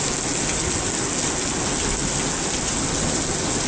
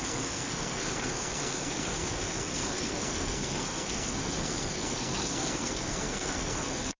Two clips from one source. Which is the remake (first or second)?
second